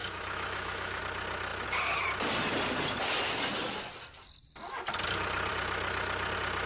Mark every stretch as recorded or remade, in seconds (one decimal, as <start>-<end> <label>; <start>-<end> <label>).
0.0-1.0 remade; 1.0-6.7 recorded